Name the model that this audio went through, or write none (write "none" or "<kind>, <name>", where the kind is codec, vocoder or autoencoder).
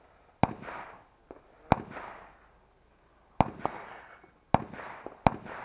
none